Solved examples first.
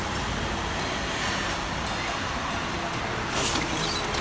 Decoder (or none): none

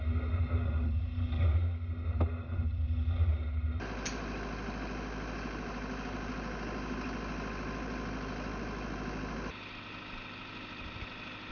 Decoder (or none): none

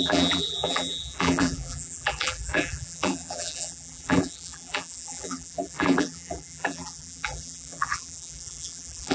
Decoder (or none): vocoder, BigVGAN v2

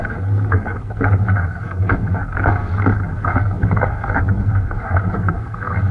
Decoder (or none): codec, SNAC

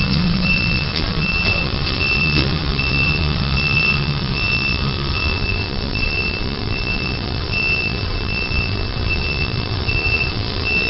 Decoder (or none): vocoder, WaveNeXt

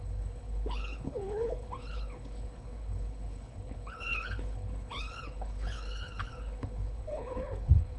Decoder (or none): codec, HILCodec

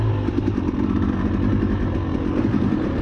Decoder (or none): none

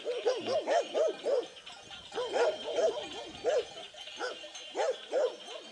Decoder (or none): none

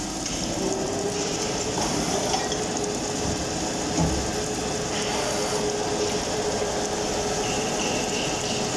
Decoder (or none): none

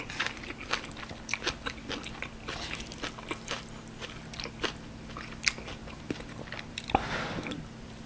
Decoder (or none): none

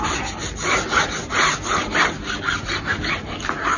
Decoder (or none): none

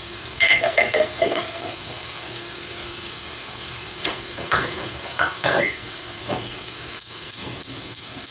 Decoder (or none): codec, SNAC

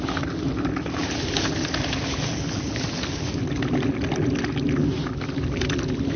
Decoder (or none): none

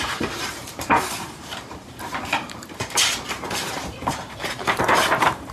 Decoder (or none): vocoder, BigVGAN v2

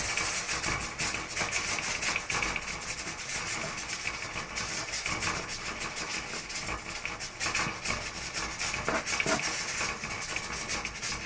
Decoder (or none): none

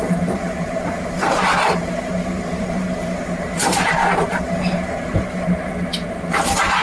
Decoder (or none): vocoder, BigVGAN v2